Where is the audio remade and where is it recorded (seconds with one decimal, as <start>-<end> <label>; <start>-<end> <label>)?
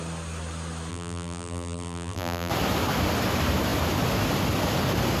0.0-0.9 recorded; 0.9-2.5 remade; 2.5-5.2 recorded